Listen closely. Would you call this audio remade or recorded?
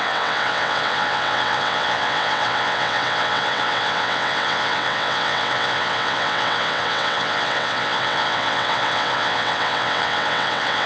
remade